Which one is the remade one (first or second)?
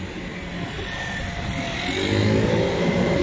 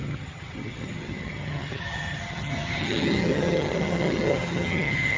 second